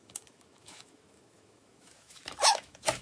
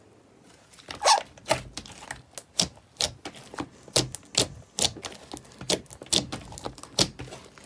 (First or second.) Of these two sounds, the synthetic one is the first